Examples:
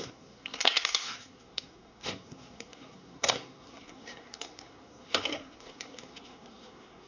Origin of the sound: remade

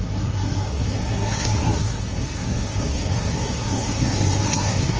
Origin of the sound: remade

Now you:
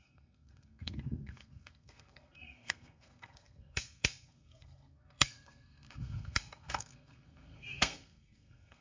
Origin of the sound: remade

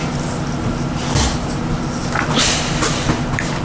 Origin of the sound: recorded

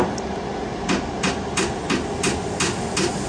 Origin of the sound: recorded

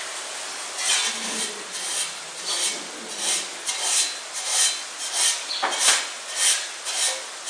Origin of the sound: recorded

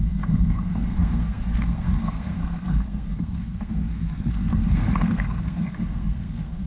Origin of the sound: remade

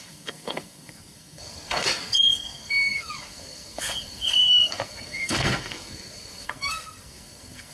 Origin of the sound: remade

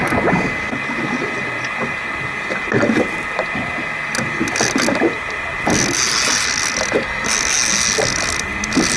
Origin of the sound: recorded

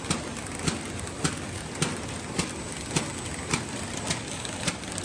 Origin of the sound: recorded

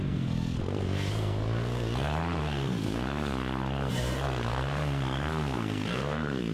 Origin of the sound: remade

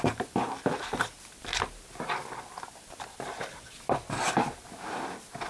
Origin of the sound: recorded